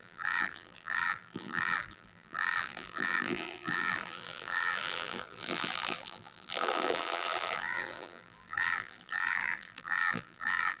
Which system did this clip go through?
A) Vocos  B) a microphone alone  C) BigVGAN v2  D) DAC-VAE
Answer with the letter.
C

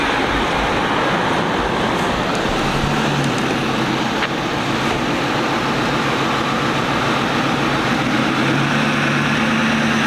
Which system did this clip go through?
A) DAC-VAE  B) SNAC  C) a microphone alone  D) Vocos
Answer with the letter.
C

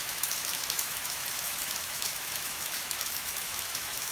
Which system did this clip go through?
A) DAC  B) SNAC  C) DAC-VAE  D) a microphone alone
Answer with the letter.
C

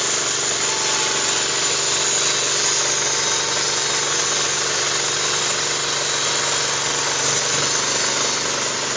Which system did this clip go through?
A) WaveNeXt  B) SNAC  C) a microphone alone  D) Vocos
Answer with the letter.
C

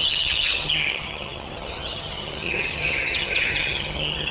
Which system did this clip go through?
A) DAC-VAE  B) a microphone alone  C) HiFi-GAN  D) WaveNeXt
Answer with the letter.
C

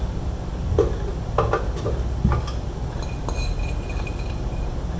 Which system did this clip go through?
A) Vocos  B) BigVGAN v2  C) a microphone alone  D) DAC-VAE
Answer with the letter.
C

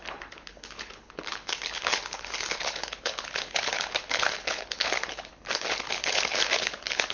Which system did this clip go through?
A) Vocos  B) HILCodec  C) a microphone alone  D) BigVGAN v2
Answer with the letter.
B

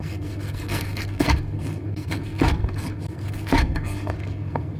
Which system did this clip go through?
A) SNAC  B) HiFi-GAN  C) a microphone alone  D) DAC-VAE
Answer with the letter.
A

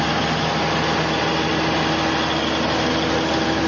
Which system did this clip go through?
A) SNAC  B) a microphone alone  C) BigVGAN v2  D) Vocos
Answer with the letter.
B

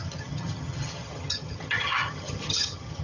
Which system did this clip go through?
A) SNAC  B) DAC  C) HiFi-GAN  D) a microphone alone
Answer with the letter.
C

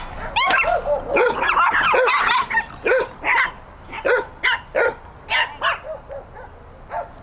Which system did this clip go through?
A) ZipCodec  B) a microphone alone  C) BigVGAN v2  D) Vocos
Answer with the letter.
B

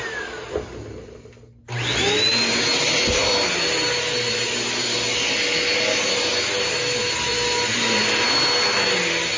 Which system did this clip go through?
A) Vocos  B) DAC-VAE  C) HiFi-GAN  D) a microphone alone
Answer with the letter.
D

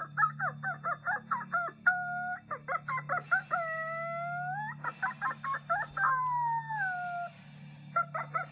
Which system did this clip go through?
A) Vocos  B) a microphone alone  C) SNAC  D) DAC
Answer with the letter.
B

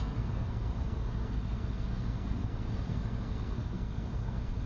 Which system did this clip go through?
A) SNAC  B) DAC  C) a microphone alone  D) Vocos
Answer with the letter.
A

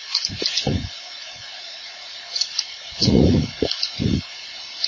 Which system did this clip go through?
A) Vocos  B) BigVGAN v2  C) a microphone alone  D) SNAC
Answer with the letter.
A